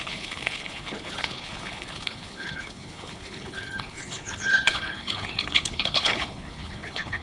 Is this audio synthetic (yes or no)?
yes